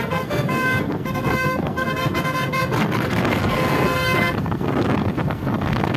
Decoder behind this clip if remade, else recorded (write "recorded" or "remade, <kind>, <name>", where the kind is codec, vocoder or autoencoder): remade, codec, SNAC